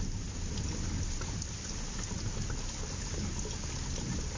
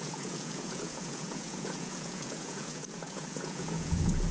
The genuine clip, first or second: first